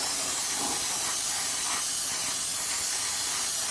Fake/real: real